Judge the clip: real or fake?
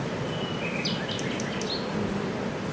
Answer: real